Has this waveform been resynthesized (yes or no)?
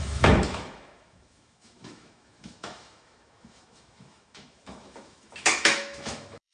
yes